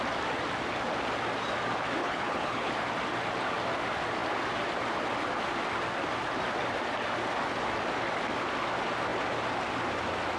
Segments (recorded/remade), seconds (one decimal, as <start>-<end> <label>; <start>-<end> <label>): 0.0-2.0 recorded; 2.0-2.7 remade; 2.7-10.4 recorded